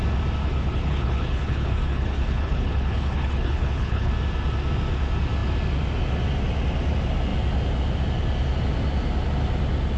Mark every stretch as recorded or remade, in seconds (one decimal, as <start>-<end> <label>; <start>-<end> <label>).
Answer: 0.0-0.4 recorded; 0.4-4.1 remade; 4.1-10.0 recorded